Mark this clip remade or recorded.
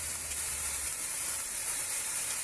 remade